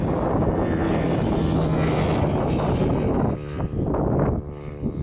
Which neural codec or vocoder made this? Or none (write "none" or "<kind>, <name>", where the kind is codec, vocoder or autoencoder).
none